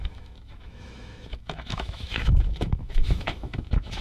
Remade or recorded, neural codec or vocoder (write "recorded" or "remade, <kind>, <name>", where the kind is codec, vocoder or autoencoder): remade, autoencoder, DAC-VAE